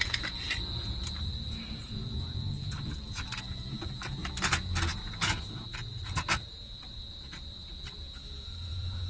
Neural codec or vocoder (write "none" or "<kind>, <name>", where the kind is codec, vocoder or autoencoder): vocoder, Vocos